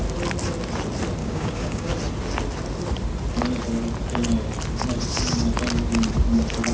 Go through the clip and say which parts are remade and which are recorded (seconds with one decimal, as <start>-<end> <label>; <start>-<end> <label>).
0.0-1.2 recorded; 1.2-1.9 remade; 1.9-6.7 recorded